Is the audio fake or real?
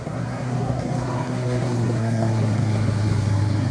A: fake